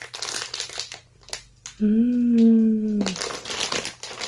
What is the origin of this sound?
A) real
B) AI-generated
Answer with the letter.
A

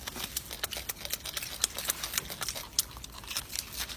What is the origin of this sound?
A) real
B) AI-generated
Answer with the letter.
A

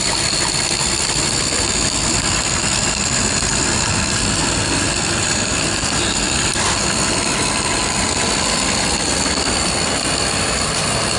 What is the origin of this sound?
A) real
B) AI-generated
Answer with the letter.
A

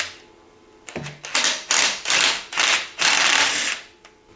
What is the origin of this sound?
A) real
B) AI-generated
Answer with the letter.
A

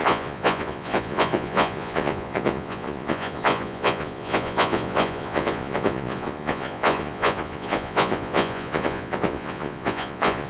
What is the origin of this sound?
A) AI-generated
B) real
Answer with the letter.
A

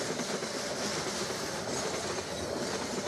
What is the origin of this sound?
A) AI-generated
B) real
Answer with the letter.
B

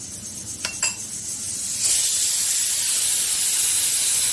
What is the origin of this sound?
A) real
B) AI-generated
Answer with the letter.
A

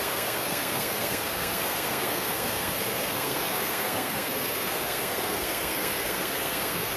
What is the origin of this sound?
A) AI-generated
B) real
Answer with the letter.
A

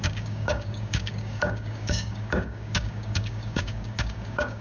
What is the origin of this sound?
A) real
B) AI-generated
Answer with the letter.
B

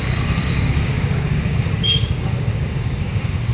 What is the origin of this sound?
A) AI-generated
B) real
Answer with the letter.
A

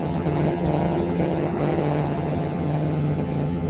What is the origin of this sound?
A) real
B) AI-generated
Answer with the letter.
B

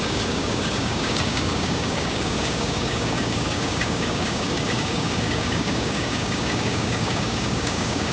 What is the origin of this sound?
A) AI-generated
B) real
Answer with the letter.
A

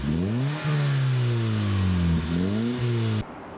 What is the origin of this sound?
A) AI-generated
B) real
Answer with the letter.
B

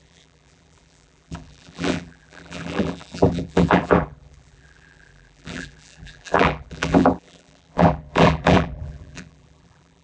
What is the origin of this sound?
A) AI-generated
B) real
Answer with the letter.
A